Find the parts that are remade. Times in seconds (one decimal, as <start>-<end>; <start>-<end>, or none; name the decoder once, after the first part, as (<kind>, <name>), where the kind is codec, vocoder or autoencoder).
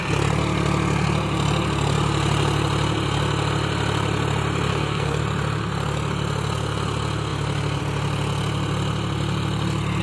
4.7-5.2 (codec, SNAC)